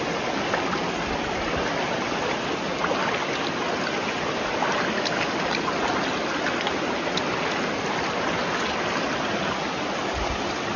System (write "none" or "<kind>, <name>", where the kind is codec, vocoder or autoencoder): none